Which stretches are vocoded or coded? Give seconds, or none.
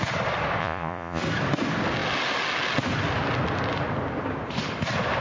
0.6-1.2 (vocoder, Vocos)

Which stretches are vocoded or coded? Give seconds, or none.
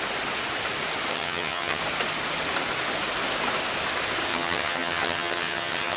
1.1-1.8 (vocoder, HiFi-GAN); 4.3-6.0